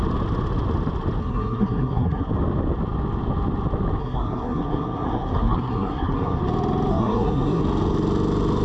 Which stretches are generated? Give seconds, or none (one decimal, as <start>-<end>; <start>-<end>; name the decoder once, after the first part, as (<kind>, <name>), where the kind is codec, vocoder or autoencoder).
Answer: 1.2-2.3 (codec, SNAC); 4.0-6.4; 6.9-7.6